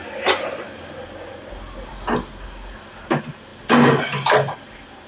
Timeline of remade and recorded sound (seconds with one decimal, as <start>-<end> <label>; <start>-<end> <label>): 0.0-5.1 recorded